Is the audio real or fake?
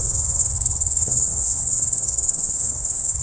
fake